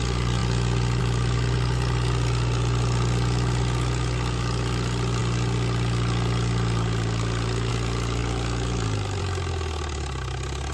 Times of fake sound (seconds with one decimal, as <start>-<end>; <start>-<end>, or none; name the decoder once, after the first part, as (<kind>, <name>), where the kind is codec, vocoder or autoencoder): none